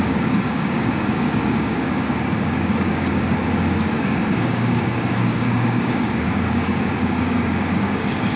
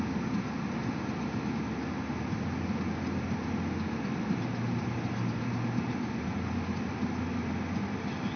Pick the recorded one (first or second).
second